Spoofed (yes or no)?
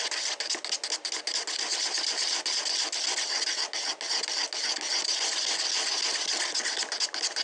no